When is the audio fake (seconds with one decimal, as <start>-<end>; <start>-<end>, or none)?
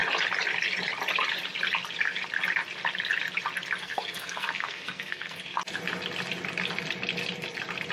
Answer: 3.8-5.6